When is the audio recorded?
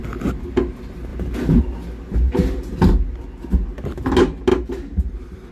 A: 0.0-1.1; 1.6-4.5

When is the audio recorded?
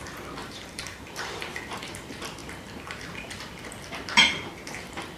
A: 0.0-0.4; 1.5-5.2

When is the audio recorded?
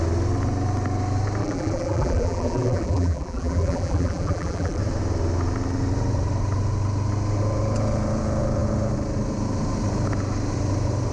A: 0.0-1.4; 4.8-11.1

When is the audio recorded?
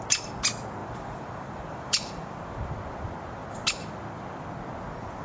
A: 0.0-0.8; 2.4-5.2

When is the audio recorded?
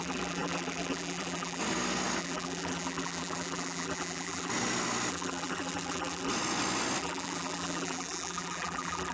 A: 1.6-2.2; 4.5-5.1; 6.3-7.0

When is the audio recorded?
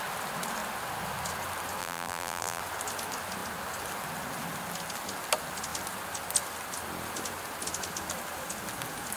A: 0.0-1.8; 2.6-9.2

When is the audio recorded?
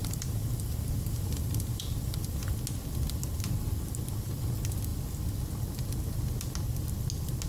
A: 2.5-7.5